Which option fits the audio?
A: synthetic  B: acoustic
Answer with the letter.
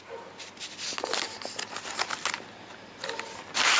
B